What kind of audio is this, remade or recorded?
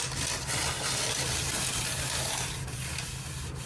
remade